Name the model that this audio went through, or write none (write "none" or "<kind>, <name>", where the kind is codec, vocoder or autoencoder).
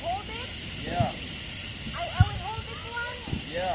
none